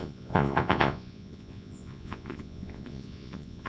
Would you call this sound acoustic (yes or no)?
no